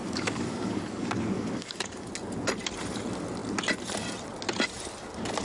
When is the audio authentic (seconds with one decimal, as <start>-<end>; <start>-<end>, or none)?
2.1-5.4

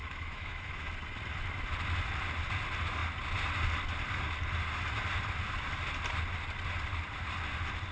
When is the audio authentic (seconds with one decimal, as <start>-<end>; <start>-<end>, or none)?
0.9-7.9

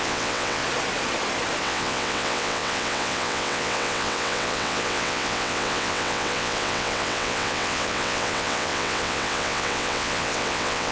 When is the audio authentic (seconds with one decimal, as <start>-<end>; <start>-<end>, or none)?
0.6-1.6

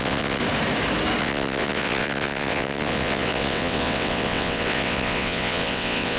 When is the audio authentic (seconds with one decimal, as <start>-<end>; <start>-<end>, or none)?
0.4-1.2

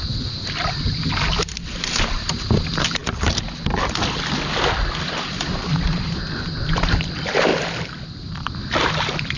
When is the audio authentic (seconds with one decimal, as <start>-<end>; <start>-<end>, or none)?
0.0-9.4

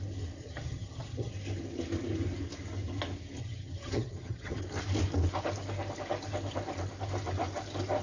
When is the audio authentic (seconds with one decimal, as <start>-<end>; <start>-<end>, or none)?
0.0-0.4; 1.3-3.4; 4.6-8.0

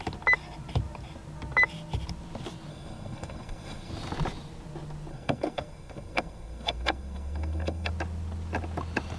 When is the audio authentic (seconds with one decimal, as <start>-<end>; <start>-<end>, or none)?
0.0-2.7; 3.9-5.1; 7.9-9.2